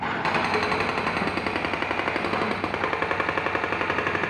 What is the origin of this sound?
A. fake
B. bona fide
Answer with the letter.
B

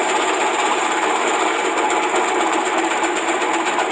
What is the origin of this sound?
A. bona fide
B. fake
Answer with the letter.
B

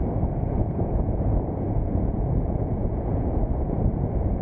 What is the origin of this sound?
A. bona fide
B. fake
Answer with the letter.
B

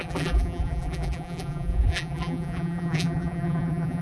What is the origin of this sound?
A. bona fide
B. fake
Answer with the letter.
B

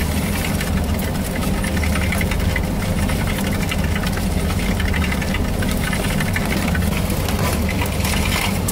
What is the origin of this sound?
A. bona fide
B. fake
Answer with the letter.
A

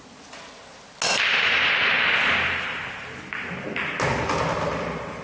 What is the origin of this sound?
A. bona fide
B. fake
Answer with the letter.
A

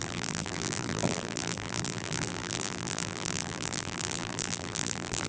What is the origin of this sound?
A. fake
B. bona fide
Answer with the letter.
A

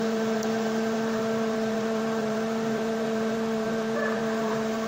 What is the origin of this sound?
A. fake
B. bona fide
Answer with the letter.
A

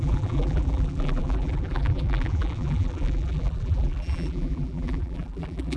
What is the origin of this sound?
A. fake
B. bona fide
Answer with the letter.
A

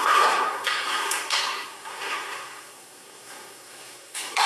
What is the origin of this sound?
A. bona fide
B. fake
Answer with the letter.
B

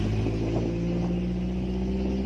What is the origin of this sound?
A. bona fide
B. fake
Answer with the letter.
A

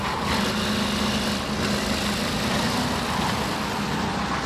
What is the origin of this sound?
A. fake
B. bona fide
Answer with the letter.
B